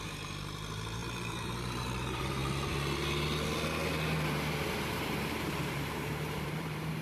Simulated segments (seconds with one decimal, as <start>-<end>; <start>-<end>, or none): 0.0-2.4; 4.7-7.0